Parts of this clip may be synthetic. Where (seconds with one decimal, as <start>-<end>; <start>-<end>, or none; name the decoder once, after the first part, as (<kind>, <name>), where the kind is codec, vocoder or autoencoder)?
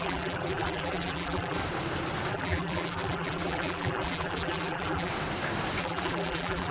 0.0-1.6 (vocoder, BigVGAN v2); 2.3-5.1; 5.8-6.7